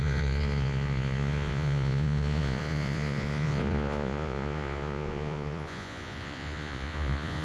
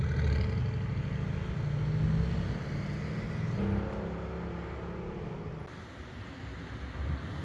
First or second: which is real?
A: second